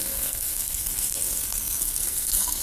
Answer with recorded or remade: remade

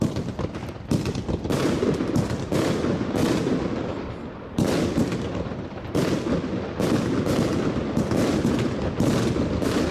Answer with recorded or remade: recorded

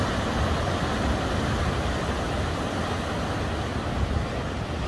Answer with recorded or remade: recorded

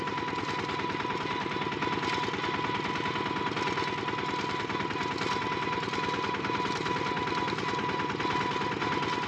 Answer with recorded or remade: recorded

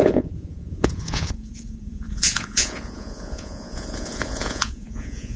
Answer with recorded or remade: remade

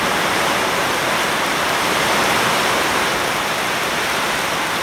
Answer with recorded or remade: remade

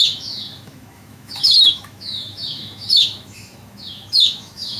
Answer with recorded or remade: remade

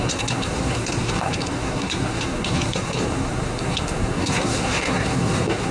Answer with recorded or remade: remade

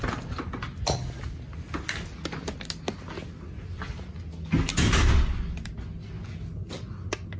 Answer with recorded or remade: recorded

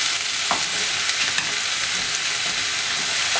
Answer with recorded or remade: recorded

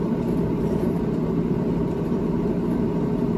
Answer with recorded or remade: remade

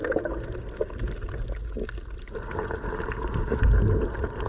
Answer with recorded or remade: recorded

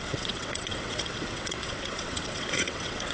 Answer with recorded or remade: remade